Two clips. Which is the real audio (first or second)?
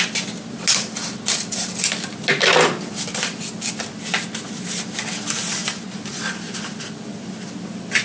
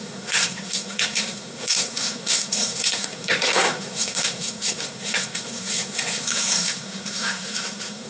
first